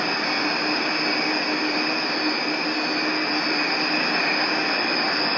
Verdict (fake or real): real